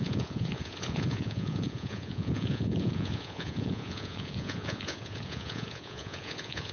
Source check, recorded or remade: remade